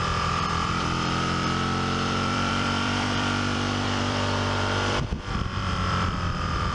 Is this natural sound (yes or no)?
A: no